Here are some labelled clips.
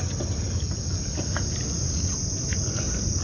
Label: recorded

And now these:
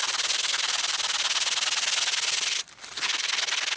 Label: recorded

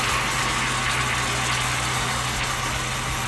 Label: recorded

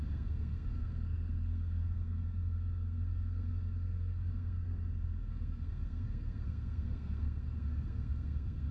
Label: remade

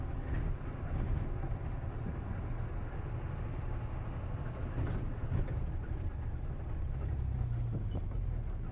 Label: recorded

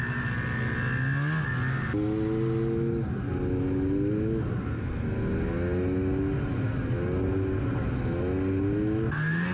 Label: recorded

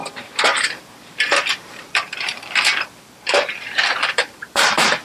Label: remade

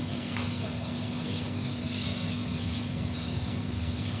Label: remade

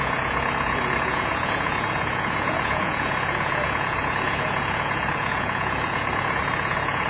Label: remade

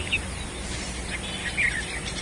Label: recorded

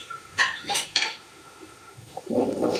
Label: remade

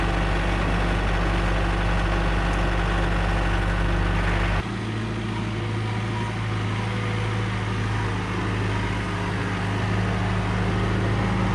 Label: recorded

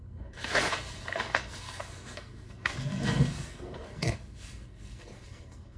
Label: remade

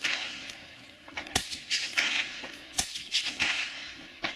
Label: remade